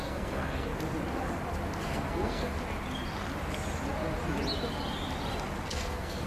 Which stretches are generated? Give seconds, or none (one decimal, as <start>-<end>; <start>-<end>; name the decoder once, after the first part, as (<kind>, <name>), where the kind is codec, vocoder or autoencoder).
0.0-0.7 (codec, SNAC); 1.8-2.5; 5.7-6.3